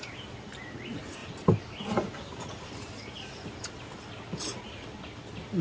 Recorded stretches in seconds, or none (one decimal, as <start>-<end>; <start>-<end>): 0.0-5.6